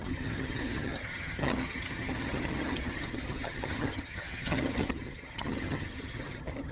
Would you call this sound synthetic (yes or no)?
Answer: yes